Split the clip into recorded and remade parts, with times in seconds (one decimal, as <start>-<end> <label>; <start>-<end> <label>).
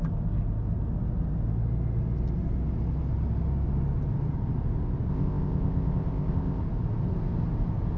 0.0-5.1 recorded; 5.1-6.6 remade; 6.6-8.0 recorded